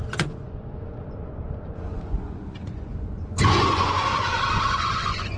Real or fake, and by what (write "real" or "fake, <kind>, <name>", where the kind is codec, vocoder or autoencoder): fake, vocoder, Vocos